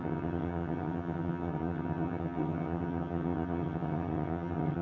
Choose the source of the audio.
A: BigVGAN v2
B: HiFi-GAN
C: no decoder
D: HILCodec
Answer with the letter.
B